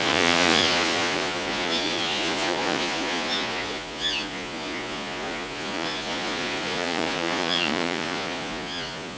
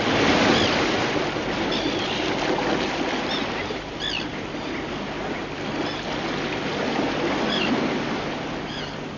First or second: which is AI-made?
first